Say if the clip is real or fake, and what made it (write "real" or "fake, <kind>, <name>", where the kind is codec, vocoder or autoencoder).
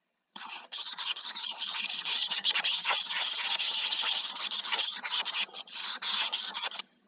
fake, vocoder, HiFi-GAN